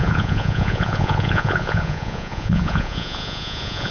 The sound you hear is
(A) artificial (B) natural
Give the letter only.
A